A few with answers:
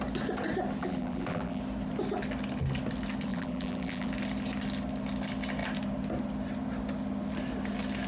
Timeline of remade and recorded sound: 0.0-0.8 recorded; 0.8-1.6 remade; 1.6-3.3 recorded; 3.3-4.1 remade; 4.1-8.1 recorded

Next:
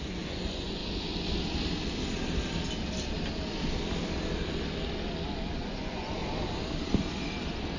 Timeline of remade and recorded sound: 0.0-0.8 remade; 0.8-5.5 recorded; 5.5-6.2 remade; 6.2-7.8 recorded

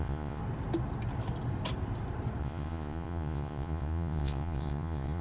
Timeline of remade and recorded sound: 0.0-0.4 remade; 0.4-2.4 recorded; 2.4-5.2 remade

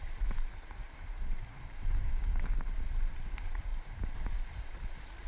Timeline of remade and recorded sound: 0.0-0.8 recorded; 0.8-2.5 remade; 2.5-5.3 recorded

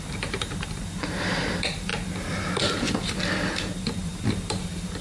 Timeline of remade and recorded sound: 0.0-1.9 remade; 1.9-4.5 recorded; 4.5-5.0 remade

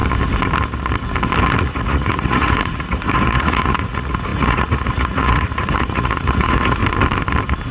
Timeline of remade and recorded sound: 0.0-1.6 recorded; 1.6-6.8 remade; 6.8-7.7 recorded

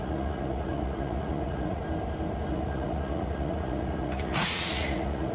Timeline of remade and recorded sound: 0.0-1.8 remade; 1.8-2.5 recorded; 2.5-5.3 remade

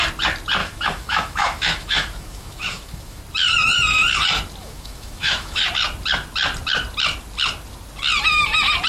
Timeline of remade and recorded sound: 0.0-0.6 recorded; 0.6-3.2 remade; 3.2-4.6 recorded; 4.6-5.6 remade; 5.6-8.9 recorded